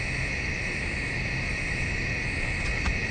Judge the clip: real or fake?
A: real